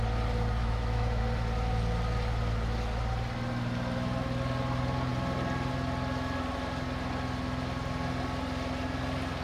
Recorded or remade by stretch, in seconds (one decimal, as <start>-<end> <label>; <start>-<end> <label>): 0.0-0.6 recorded; 0.6-1.2 remade; 1.2-9.4 recorded